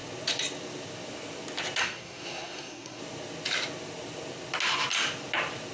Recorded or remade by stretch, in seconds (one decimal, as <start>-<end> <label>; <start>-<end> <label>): 0.0-1.8 recorded; 1.8-3.0 remade; 3.0-5.7 recorded